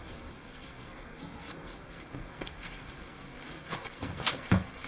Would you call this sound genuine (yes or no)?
no